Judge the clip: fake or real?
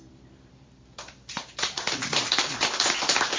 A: fake